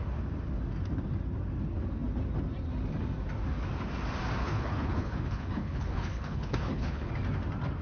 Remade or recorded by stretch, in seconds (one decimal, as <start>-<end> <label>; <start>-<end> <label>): 0.0-4.4 recorded; 4.4-7.1 remade; 7.1-7.8 recorded